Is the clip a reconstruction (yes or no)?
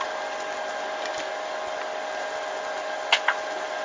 no